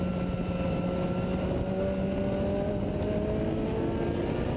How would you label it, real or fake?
real